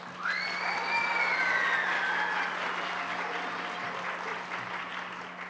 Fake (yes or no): no